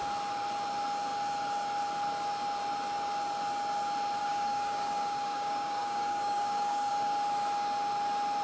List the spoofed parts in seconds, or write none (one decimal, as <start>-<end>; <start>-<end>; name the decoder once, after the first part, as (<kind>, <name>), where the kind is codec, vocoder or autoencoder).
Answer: 4.2-6.9 (codec, DAC)